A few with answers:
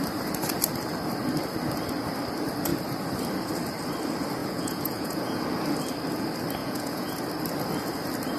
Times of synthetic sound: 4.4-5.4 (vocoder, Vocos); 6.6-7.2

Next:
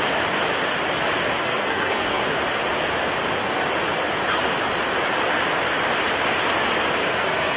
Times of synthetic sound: 1.4-2.2 (codec, SNAC); 7.0-7.6

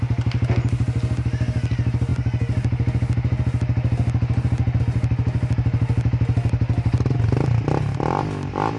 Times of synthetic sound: none

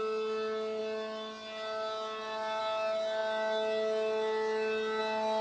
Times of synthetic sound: none

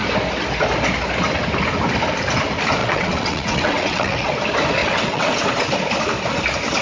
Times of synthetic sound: 2.8-4.3 (vocoder, WaveNeXt); 4.8-5.3